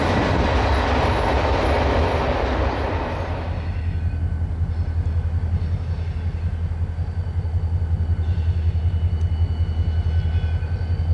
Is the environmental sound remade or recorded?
recorded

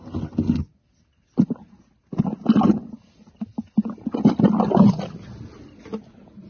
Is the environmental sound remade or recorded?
recorded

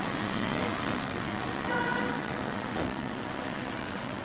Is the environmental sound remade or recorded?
remade